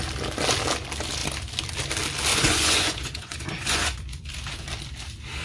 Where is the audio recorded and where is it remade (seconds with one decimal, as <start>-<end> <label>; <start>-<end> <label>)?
0.0-2.3 recorded; 2.3-4.2 remade; 4.2-5.4 recorded